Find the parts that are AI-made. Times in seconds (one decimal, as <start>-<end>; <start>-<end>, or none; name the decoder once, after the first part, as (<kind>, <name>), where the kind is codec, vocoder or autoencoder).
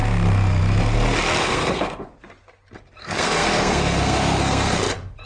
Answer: 1.4-2.1 (codec, SNAC); 3.0-4.8